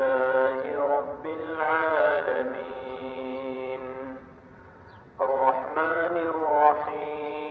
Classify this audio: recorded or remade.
remade